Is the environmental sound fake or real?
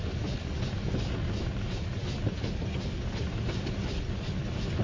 real